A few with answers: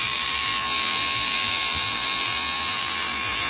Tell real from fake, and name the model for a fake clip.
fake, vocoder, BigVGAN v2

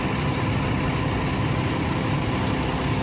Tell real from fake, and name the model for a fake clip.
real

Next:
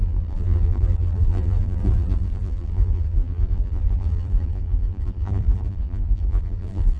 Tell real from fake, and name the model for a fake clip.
fake, vocoder, BigVGAN v2